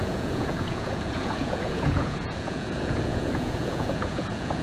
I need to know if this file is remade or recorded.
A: remade